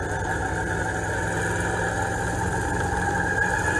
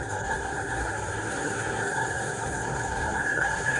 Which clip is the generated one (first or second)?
second